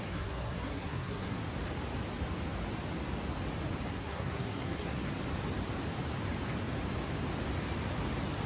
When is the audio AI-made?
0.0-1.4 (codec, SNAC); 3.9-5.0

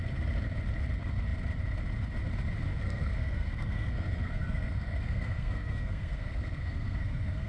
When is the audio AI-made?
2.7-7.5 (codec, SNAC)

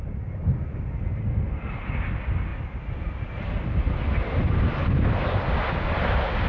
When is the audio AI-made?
1.2-1.7 (codec, SNAC)

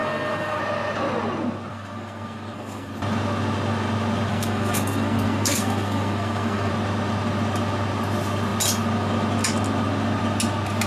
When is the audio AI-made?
0.0-0.6 (codec, SNAC); 1.7-2.9; 4.3-6.7

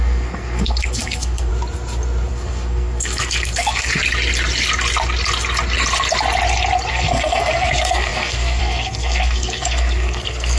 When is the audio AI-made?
0.0-1.5 (codec, SNAC); 2.3-4.0; 6.9-10.6

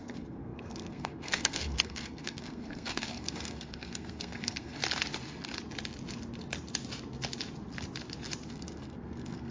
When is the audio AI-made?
0.0-4.8 (codec, SNAC); 8.5-9.5